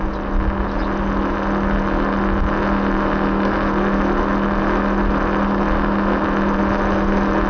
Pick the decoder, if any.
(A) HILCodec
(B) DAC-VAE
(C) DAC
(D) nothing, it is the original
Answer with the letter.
D